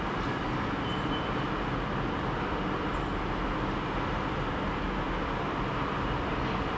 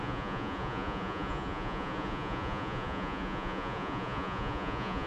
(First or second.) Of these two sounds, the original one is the first